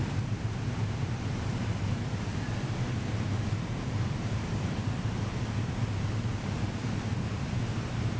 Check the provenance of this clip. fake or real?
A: fake